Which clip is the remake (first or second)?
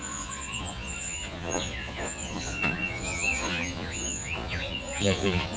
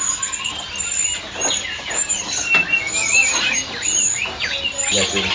first